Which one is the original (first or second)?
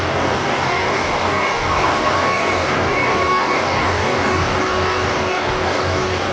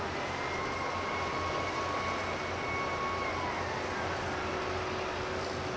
second